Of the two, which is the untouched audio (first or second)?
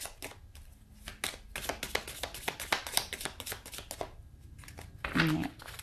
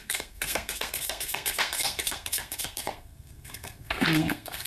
first